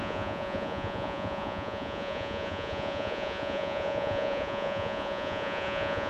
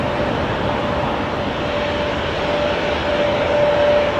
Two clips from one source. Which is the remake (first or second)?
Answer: first